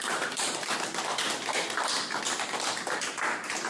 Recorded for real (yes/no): yes